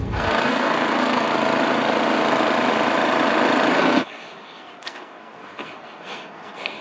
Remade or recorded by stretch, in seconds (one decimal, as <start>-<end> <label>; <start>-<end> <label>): 0.0-1.3 remade; 1.3-3.7 recorded; 3.7-6.8 remade